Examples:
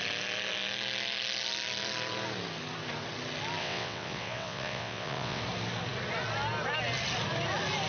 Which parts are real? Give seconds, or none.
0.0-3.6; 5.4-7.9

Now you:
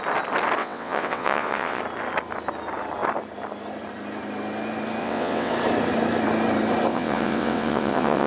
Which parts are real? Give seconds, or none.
0.0-0.6; 1.8-5.0; 5.5-6.9

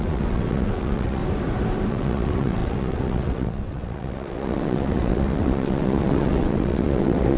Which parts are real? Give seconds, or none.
1.2-1.9

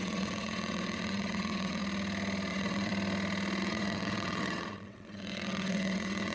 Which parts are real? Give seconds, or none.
1.8-2.5; 2.9-3.6

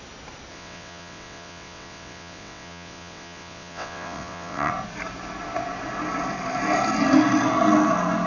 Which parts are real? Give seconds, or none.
0.0-0.5; 4.7-8.3

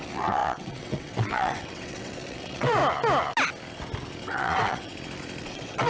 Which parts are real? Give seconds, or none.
2.8-4.2; 4.9-5.4

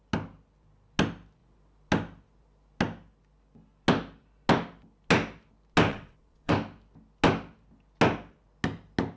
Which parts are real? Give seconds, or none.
0.0-5.9; 6.5-9.2

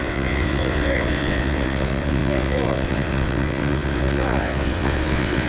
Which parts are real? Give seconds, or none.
none